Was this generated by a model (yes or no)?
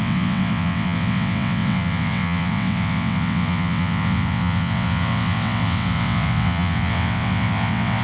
yes